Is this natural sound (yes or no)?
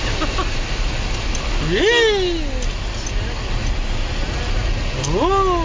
yes